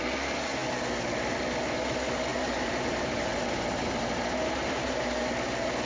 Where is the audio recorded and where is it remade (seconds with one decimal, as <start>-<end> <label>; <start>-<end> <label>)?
0.0-2.3 recorded; 2.3-5.3 remade; 5.3-5.9 recorded